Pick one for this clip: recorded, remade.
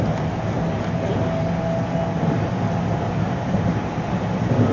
recorded